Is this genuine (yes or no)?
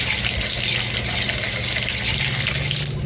yes